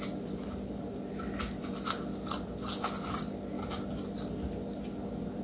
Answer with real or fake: real